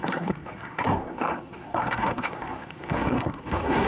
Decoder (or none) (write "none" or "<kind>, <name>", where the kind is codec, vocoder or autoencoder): codec, SNAC